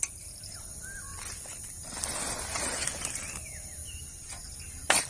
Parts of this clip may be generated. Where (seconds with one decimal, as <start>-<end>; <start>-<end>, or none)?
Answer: none